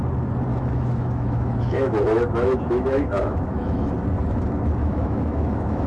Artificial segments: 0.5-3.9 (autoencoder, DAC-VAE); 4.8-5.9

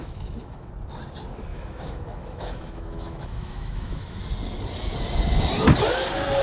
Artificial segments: 0.0-0.7 (autoencoder, DAC-VAE); 1.5-4.2